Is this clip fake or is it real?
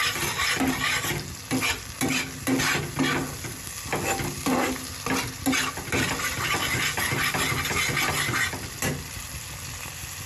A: real